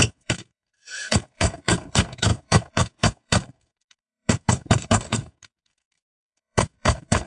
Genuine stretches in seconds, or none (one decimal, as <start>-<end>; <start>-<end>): none